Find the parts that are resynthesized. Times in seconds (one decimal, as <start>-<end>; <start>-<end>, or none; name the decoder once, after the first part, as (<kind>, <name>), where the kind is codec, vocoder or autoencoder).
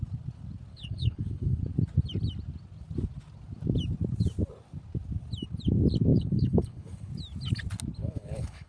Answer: 0.7-1.6 (codec, HILCodec); 6.1-7.1; 8.0-8.7